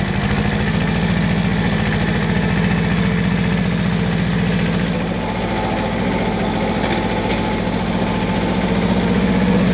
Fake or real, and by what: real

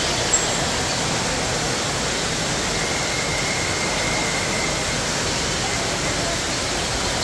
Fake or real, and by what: real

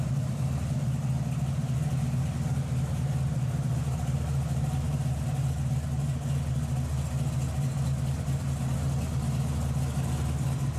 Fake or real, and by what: real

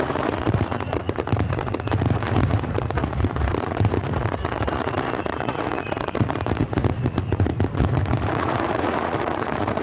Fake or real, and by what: fake, vocoder, Vocos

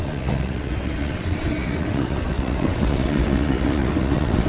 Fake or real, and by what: fake, vocoder, WaveNeXt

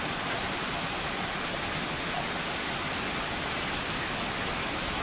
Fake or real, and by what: real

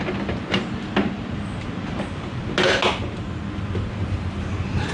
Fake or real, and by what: real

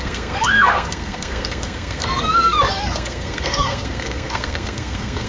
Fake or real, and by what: fake, codec, SNAC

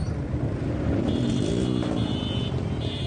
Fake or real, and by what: real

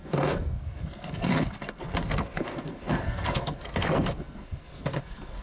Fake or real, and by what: fake, codec, SNAC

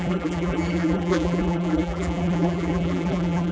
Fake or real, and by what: fake, vocoder, BigVGAN v2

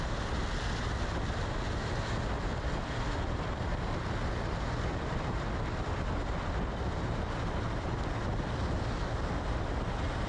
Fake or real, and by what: real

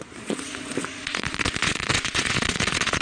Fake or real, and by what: fake, vocoder, Vocos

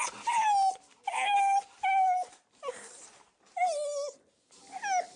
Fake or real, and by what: real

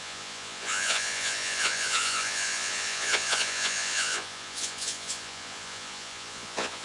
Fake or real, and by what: fake, vocoder, Vocos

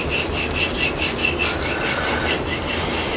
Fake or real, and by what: real